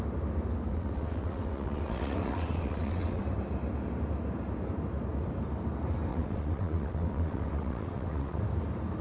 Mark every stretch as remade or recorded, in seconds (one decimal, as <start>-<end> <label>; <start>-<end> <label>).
0.0-0.7 recorded; 0.7-3.2 remade; 3.2-6.1 recorded; 6.1-8.4 remade; 8.4-9.0 recorded